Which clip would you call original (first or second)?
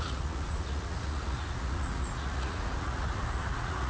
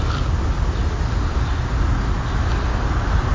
second